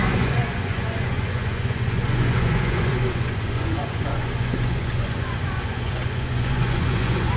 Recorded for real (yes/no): no